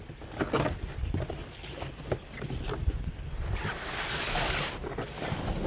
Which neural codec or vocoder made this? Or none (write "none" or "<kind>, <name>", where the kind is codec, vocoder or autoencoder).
none